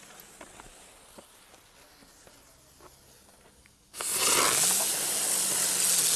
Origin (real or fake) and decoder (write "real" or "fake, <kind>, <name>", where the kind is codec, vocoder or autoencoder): real